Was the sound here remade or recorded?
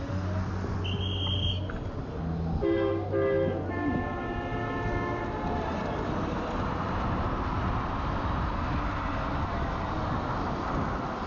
recorded